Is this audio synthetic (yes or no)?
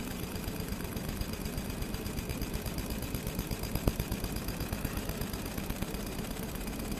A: yes